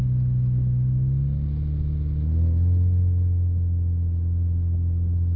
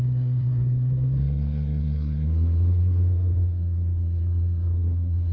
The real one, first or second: first